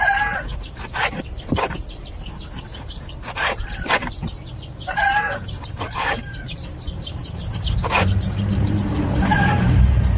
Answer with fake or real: fake